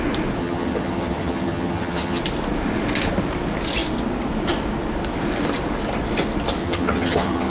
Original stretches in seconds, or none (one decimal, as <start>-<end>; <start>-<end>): 0.0-0.4; 2.2-6.6